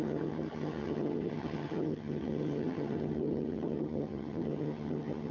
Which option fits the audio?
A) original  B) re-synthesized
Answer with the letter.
B